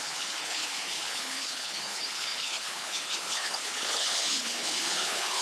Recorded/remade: remade